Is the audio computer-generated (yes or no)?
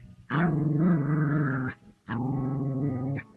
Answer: no